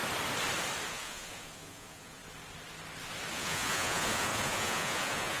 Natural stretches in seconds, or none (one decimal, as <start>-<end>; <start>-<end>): 0.0-0.9; 2.2-3.3